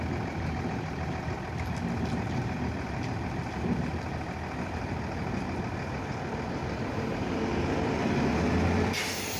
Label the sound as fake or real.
real